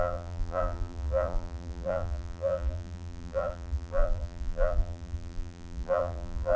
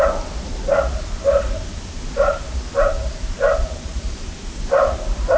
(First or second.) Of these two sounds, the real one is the second